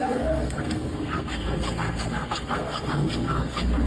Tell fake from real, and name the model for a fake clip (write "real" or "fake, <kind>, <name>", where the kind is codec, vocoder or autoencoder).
fake, codec, SNAC